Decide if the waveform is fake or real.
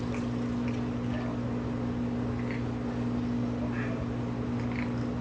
real